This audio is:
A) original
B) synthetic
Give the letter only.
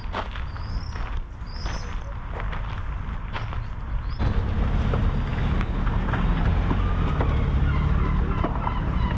A